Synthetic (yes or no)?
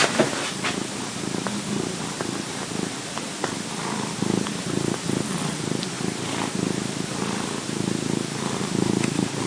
no